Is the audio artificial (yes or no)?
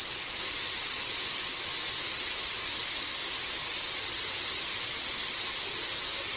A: no